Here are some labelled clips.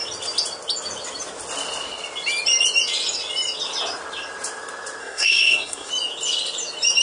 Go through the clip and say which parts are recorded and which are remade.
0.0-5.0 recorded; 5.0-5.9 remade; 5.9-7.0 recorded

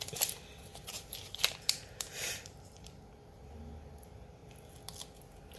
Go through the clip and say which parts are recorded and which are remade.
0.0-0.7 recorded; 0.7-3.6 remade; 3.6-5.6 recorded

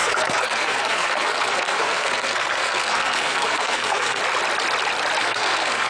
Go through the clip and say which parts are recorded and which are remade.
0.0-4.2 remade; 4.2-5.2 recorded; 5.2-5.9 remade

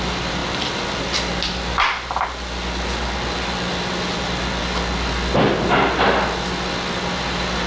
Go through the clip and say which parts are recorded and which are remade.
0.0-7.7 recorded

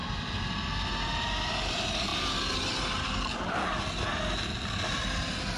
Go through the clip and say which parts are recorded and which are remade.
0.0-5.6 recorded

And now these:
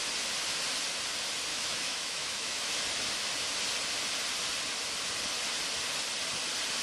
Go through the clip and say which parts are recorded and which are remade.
0.0-1.5 recorded; 1.5-2.8 remade; 2.8-6.8 recorded

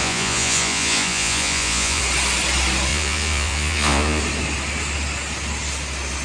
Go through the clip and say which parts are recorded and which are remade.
0.0-2.0 remade; 2.0-2.9 recorded; 2.9-4.2 remade; 4.2-6.2 recorded

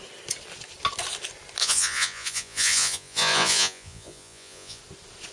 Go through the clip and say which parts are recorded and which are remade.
0.0-1.6 recorded; 1.6-4.8 remade; 4.8-5.3 recorded